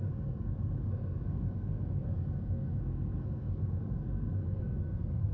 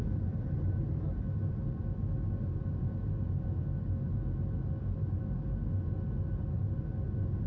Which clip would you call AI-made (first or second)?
first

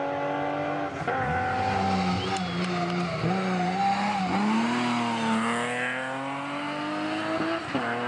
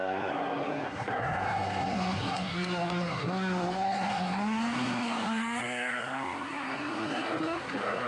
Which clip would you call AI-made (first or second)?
second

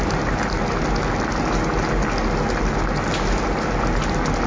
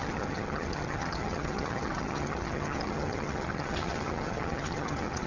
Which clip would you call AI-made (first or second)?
second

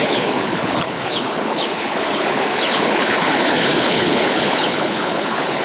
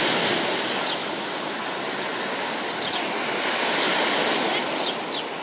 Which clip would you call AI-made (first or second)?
first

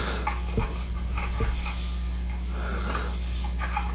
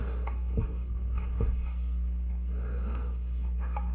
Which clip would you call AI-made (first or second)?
second